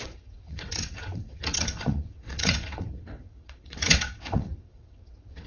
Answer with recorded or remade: remade